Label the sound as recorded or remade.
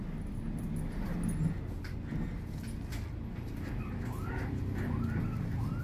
recorded